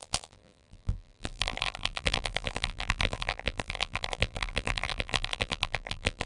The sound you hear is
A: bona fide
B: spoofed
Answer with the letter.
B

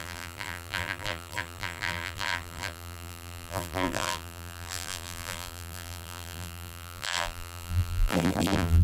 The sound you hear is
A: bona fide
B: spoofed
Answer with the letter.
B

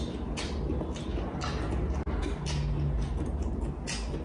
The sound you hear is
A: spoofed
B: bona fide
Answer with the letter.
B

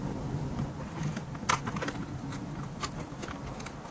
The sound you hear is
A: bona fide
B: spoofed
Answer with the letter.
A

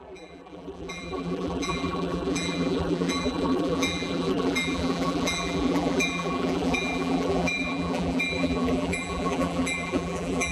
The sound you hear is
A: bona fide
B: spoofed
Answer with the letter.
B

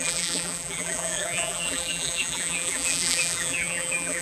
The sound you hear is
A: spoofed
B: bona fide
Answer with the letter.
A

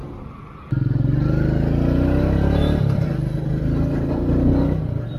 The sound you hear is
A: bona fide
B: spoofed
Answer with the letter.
A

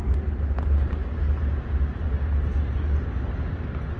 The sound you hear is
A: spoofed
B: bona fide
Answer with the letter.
B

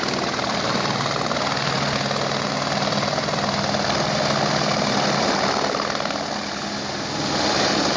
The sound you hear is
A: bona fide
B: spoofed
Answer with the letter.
A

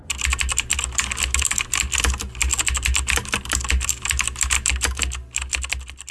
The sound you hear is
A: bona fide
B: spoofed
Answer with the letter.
A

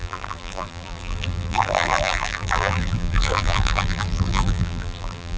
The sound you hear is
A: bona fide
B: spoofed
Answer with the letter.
B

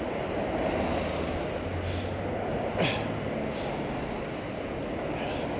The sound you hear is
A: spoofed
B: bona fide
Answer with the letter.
B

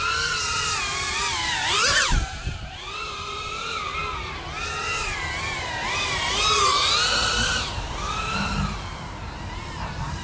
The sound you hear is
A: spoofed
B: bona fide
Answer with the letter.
A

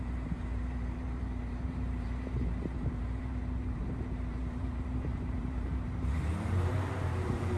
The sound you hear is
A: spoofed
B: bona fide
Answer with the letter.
A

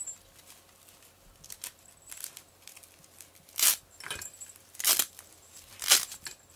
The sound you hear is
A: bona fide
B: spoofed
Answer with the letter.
A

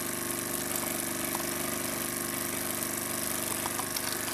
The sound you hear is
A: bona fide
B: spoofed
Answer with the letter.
A